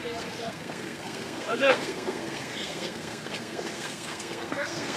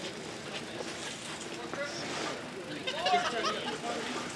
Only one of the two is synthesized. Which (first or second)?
first